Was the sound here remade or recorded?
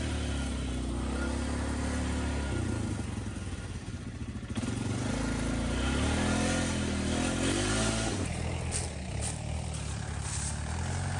recorded